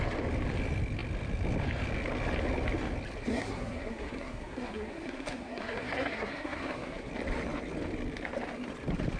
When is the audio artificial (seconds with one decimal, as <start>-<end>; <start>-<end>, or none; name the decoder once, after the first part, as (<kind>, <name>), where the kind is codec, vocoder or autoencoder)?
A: 3.3-7.1 (codec, SNAC)